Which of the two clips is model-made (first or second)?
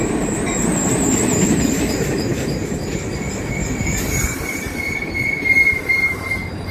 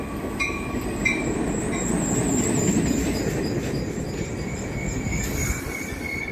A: first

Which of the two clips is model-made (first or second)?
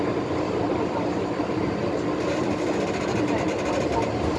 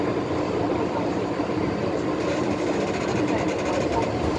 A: second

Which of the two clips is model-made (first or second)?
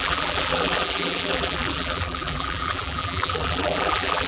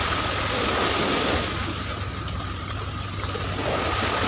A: first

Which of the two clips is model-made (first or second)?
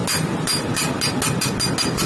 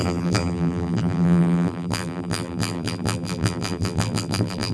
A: second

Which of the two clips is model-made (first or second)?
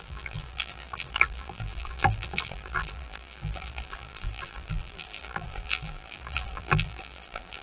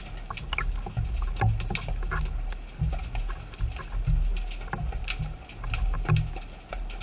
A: first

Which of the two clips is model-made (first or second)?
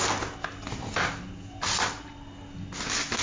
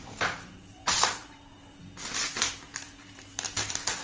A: second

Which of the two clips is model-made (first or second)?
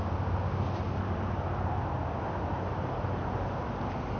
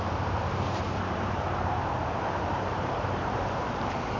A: second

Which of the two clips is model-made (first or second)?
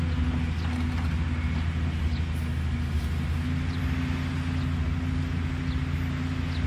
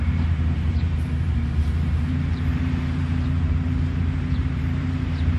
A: second